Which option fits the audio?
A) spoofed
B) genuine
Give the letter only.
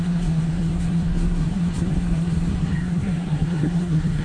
A